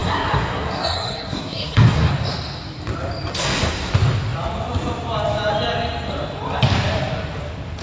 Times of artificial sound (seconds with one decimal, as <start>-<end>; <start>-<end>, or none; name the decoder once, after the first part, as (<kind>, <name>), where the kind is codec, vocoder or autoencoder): 0.0-2.1 (codec, SNAC); 3.3-3.9